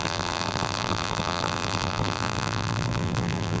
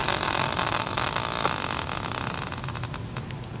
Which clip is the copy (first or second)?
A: first